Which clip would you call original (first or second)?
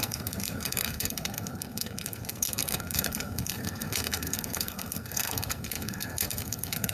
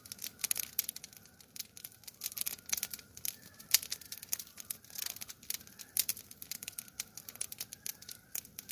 second